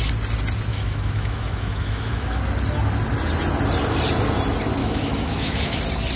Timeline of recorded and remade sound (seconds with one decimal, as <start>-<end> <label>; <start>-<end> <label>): 0.0-0.7 recorded; 0.7-2.4 remade; 2.4-4.8 recorded; 4.8-5.8 remade; 5.8-6.2 recorded